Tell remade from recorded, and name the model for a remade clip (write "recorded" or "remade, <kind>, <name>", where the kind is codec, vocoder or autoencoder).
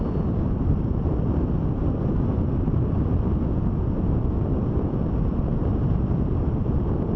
recorded